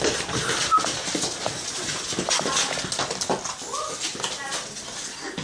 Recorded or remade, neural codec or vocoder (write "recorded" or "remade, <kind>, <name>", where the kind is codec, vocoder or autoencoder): recorded